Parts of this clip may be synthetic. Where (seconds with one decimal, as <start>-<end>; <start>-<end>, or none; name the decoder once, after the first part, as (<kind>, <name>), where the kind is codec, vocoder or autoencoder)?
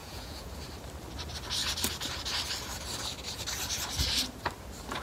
0.0-0.5 (vocoder, Vocos)